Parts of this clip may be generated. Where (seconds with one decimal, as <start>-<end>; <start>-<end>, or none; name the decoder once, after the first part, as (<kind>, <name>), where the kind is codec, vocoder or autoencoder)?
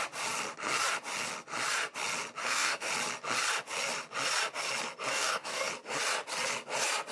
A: 2.4-2.9 (codec, DAC); 5.1-5.7